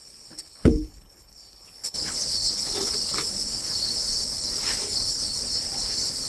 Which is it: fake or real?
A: fake